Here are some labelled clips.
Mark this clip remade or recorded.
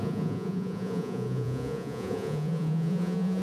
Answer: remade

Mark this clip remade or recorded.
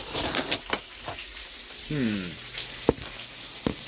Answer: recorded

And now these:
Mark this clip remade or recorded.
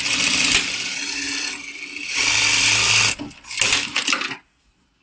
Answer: recorded